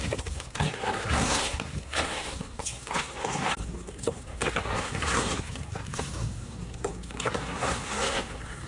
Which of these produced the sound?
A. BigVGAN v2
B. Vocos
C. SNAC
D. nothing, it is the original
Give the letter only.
C